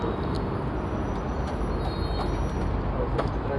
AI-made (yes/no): no